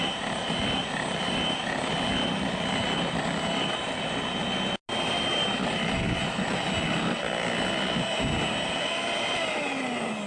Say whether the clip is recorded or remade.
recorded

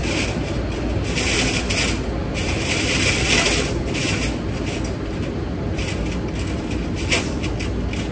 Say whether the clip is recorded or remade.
recorded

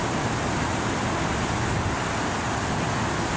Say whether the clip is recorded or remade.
recorded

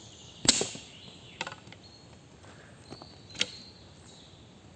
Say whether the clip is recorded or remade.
recorded